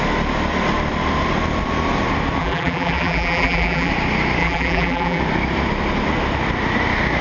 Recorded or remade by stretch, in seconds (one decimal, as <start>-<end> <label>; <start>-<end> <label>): 0.0-2.4 recorded; 2.4-3.9 remade; 3.9-4.4 recorded; 4.4-5.2 remade; 5.2-7.2 recorded